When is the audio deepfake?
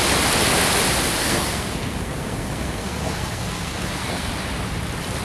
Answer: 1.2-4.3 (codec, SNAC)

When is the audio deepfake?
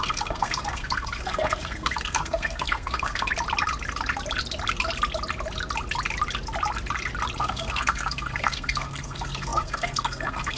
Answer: 0.0-3.3 (codec, SNAC); 7.4-10.6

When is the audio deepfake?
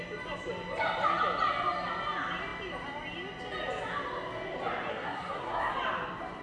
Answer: 4.9-5.7 (codec, SNAC)